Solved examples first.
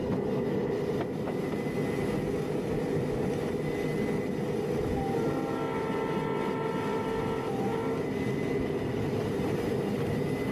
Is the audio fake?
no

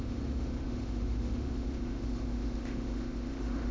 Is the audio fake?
yes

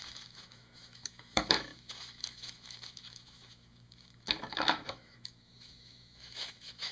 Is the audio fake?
yes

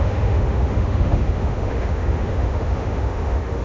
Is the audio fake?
yes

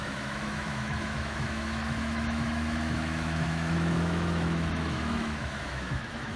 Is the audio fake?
yes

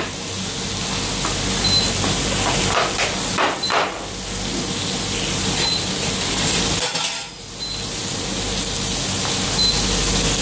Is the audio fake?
no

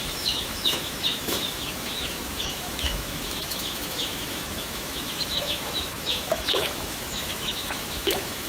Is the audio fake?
yes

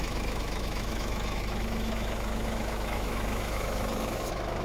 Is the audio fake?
yes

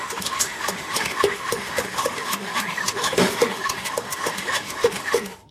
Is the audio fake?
yes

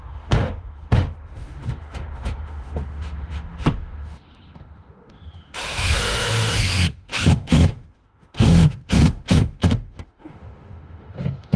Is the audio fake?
yes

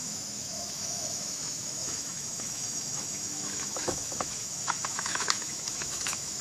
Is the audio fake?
yes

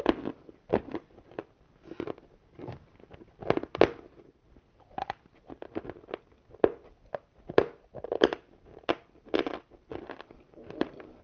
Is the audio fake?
no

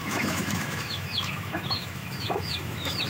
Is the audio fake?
yes